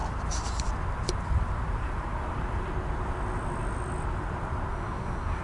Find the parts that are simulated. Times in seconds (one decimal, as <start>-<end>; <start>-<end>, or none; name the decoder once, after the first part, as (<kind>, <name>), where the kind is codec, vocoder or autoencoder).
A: 4.7-5.4 (codec, SNAC)

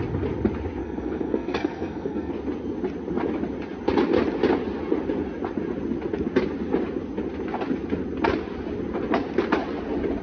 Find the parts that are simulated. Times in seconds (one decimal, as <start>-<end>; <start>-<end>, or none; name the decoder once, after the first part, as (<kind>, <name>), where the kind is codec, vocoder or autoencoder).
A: 0.8-2.3 (codec, SNAC)

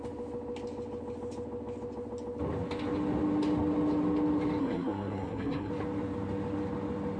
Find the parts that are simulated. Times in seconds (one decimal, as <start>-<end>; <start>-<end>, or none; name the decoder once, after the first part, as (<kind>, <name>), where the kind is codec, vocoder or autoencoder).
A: 4.6-5.7 (codec, SNAC)

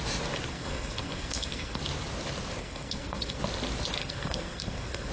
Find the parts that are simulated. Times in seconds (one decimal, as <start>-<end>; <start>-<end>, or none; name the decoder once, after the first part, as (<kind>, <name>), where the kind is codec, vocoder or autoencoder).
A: 0.5-1.8 (codec, SNAC); 2.6-3.4; 4.0-5.1

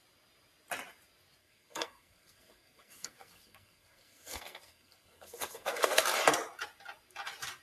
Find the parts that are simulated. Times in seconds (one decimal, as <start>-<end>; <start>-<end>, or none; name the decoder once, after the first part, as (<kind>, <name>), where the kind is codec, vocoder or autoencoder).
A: 1.4-6.0 (codec, SNAC)